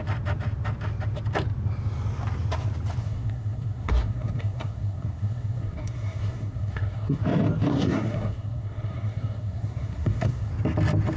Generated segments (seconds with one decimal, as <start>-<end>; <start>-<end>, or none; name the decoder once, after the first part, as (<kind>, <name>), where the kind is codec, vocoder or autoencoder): 3.0-7.2 (codec, SNAC); 7.7-10.5